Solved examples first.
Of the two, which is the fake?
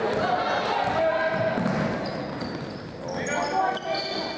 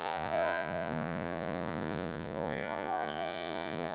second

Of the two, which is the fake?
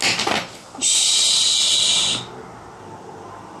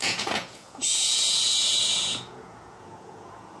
second